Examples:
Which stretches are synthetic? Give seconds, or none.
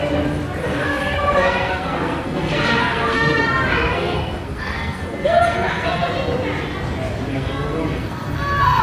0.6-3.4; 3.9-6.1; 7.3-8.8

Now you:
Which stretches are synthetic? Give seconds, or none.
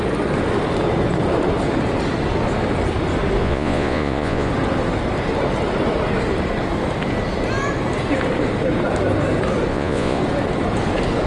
3.4-4.5; 9.7-10.2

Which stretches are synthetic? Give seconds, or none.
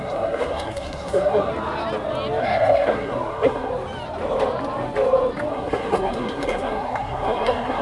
0.0-1.5; 2.4-3.7; 5.5-7.8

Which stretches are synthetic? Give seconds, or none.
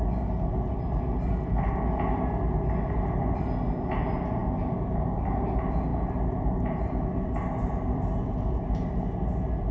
5.9-9.0